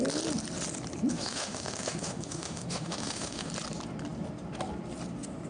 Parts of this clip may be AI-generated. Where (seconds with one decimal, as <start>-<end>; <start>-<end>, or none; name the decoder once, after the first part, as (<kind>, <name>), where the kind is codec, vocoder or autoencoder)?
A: 1.1-3.5 (autoencoder, DAC-VAE)